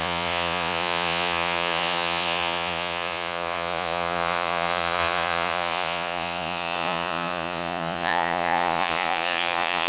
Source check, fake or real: fake